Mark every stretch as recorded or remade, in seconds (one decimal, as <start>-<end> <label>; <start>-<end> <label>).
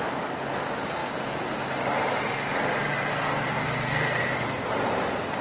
0.0-3.1 recorded; 3.1-4.2 remade; 4.2-5.4 recorded